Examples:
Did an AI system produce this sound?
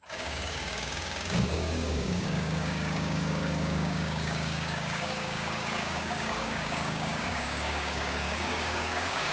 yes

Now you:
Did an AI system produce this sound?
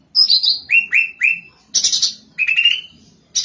no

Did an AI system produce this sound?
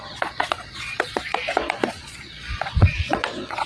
yes